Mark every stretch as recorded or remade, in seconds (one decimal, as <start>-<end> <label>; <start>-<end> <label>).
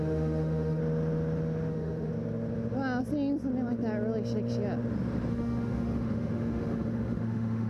0.0-0.8 remade; 0.8-1.7 recorded; 1.7-2.1 remade; 2.1-5.3 recorded; 5.3-7.7 remade